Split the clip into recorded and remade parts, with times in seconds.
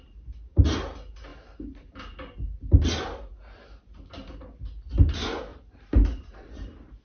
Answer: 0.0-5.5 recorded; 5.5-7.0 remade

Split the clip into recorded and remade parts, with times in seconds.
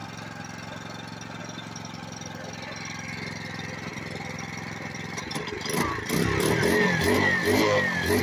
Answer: 0.0-3.9 recorded; 3.9-7.4 remade; 7.4-8.2 recorded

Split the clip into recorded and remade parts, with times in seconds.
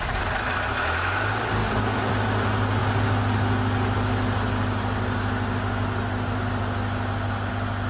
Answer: 0.0-7.9 recorded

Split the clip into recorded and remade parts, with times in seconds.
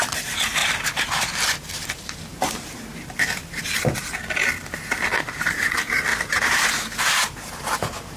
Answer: 0.0-0.6 recorded; 0.6-3.6 remade; 3.6-6.1 recorded; 6.1-8.2 remade